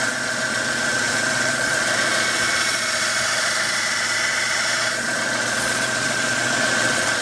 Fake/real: fake